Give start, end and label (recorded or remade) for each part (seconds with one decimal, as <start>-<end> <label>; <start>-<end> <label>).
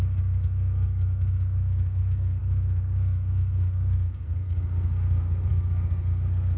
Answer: 0.0-6.6 remade